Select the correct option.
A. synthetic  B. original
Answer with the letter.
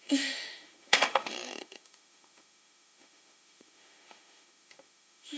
A